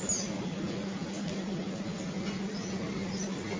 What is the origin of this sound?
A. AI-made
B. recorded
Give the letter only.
B